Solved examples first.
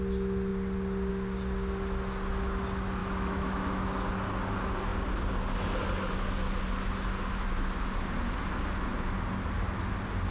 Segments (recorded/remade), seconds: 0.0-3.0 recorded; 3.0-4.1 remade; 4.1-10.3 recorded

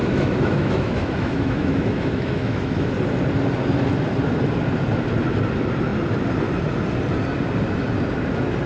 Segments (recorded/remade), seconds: 0.0-2.9 remade; 2.9-8.7 recorded

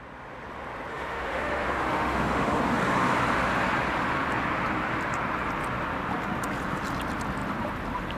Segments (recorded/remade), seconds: 0.0-0.9 recorded; 0.9-2.6 remade; 2.6-8.2 recorded

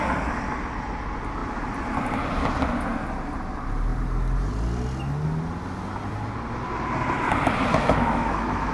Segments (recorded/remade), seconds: 0.0-7.7 recorded; 7.7-8.7 remade

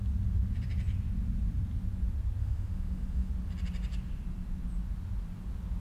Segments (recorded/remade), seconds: 0.0-2.4 recorded; 2.4-3.3 remade; 3.3-5.8 recorded

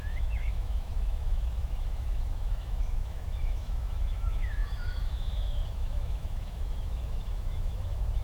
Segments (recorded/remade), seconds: 0.0-8.2 remade